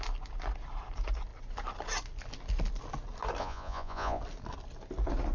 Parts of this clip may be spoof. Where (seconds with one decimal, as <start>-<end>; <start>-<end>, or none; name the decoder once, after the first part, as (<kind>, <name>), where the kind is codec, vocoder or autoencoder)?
3.4-4.2 (vocoder, Vocos)